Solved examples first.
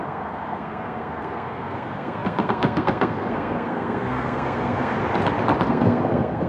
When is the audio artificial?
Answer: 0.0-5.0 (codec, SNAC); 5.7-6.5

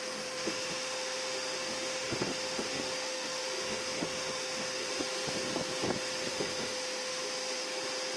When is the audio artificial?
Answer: 0.0-4.9 (autoencoder, DAC-VAE); 6.3-7.6

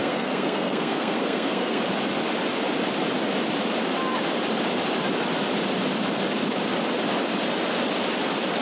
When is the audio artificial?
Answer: 0.0-1.8 (codec, SNAC)